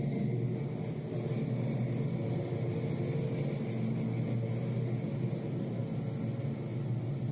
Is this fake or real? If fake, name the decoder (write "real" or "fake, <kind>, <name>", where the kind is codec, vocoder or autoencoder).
real